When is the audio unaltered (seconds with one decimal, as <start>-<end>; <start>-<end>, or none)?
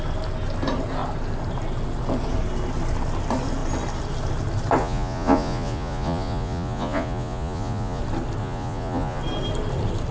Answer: 0.0-4.8; 8.0-8.4; 9.2-10.1